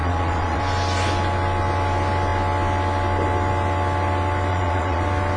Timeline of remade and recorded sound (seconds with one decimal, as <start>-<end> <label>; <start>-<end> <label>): 0.0-0.6 remade; 0.6-4.5 recorded; 4.5-5.0 remade; 5.0-5.4 recorded